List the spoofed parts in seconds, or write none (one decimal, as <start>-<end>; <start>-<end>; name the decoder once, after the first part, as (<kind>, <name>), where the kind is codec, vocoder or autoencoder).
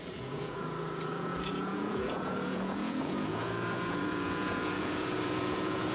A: 0.0-5.9 (vocoder, Vocos)